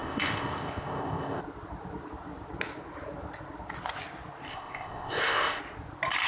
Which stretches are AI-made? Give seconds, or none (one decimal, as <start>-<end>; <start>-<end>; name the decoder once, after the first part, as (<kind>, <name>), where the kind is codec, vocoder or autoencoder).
0.0-1.4 (codec, ZipCodec); 4.5-5.6